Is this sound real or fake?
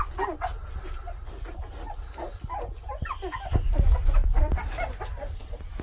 real